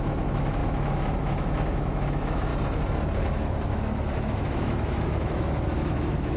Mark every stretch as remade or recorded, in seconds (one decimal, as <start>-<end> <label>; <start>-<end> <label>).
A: 0.0-2.5 remade; 2.5-3.2 recorded; 3.2-6.4 remade